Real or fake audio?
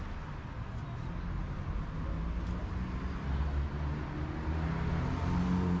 real